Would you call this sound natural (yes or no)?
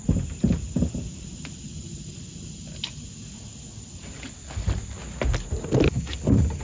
yes